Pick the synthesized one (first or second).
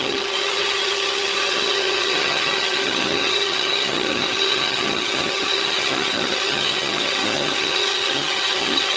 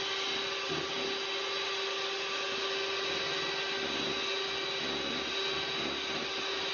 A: first